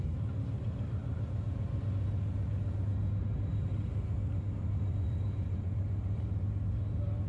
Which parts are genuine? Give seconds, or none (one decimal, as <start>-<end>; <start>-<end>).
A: 0.0-3.5; 6.4-7.3